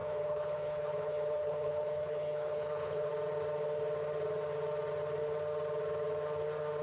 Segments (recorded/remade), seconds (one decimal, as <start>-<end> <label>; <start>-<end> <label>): 0.0-3.1 remade; 3.1-6.8 recorded

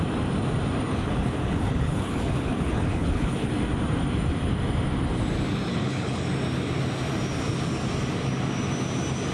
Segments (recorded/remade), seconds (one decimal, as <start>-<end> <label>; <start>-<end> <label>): 0.0-0.9 recorded; 0.9-3.5 remade; 3.5-5.7 recorded; 5.7-6.2 remade; 6.2-9.3 recorded

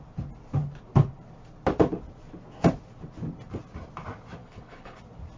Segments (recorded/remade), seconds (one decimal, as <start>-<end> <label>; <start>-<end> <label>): 0.0-4.4 recorded; 4.4-5.0 remade; 5.0-5.4 recorded

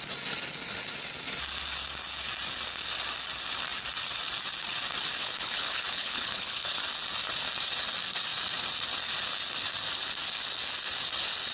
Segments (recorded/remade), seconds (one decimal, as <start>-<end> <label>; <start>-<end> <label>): 0.0-5.2 recorded; 5.2-6.8 remade; 6.8-11.5 recorded